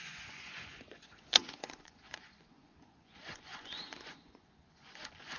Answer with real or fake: fake